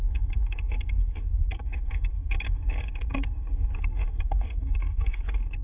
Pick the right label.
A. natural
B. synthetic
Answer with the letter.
B